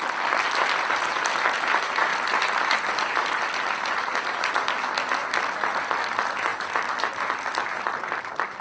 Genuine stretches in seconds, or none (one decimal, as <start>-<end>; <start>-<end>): 0.0-8.6